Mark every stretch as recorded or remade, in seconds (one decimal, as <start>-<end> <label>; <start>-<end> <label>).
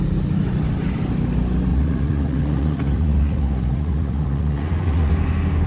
0.0-1.7 recorded; 1.7-5.1 remade; 5.1-5.7 recorded